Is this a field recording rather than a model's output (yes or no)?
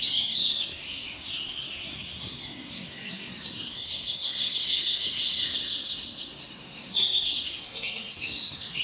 no